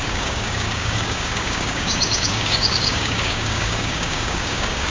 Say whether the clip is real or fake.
fake